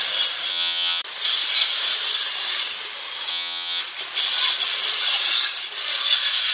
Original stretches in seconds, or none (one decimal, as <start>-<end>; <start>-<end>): 0.0-0.5; 1.0-3.3; 3.8-6.5